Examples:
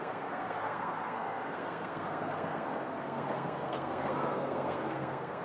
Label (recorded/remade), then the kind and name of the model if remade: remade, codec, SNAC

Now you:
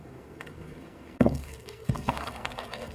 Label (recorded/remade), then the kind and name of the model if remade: remade, codec, SNAC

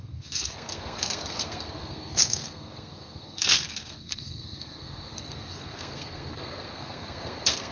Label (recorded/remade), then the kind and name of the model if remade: remade, codec, SNAC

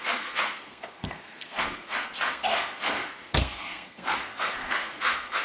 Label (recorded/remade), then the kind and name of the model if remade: remade, codec, SNAC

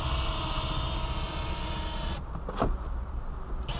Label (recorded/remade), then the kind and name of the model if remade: recorded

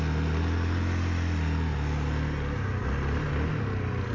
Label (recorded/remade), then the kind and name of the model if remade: recorded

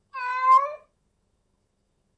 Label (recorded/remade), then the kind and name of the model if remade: remade, autoencoder, DAC-VAE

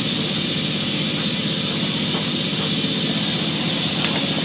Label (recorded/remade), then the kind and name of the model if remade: recorded